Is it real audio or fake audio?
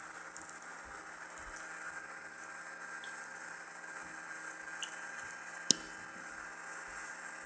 real